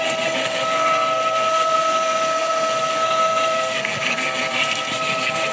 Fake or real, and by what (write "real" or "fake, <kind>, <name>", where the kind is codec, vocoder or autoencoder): fake, codec, SNAC